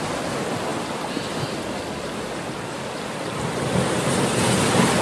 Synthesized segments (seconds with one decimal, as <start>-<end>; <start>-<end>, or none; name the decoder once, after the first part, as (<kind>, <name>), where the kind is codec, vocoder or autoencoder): none